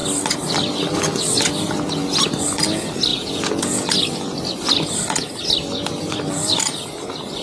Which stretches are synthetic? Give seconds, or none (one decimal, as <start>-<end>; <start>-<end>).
3.1-3.9